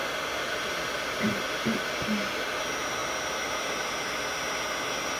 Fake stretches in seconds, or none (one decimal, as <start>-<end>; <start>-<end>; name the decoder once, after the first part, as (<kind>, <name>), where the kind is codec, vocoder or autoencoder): none